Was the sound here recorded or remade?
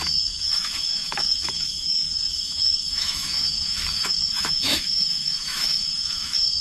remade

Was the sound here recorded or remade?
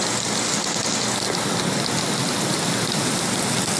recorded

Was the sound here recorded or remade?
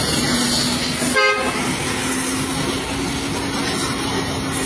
recorded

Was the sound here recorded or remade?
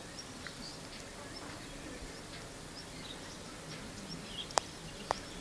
recorded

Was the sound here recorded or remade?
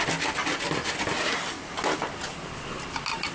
recorded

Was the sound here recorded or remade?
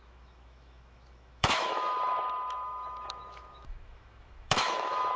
remade